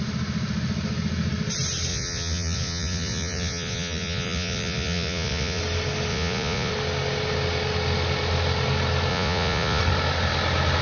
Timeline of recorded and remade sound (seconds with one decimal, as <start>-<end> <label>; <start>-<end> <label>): 0.0-1.9 recorded; 1.9-5.6 remade; 5.6-6.1 recorded; 6.1-6.7 remade; 6.7-9.1 recorded; 9.1-9.8 remade; 9.8-10.8 recorded